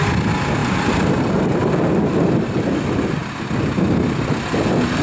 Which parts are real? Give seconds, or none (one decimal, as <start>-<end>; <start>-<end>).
0.0-5.0